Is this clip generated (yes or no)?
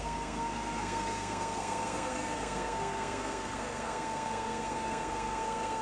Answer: yes